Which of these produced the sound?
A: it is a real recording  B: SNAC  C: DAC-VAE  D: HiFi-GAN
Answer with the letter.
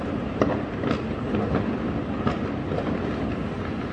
A